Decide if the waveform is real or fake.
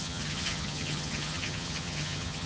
fake